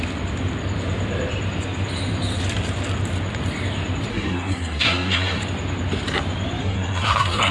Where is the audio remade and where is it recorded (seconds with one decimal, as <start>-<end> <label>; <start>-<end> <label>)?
0.0-4.1 recorded; 4.1-5.4 remade; 5.4-6.6 recorded; 6.6-7.5 remade